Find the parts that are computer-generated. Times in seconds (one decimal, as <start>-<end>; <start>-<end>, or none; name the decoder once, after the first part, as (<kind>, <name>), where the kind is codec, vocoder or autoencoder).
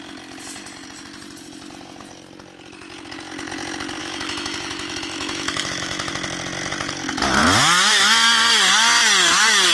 4.0-6.1 (autoencoder, DAC-VAE)